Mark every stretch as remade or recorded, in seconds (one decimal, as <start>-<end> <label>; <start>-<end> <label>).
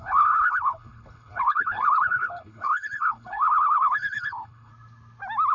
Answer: 0.0-4.7 remade; 4.7-5.5 recorded